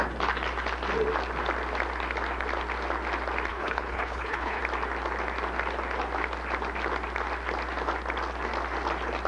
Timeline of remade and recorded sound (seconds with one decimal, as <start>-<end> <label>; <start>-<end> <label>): 0.0-3.5 recorded; 3.5-4.6 remade; 4.6-9.3 recorded